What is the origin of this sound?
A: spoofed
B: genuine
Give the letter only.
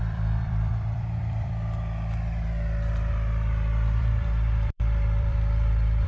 A